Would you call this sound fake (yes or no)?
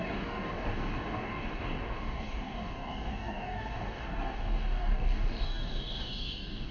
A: yes